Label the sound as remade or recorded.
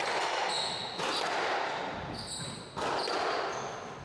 recorded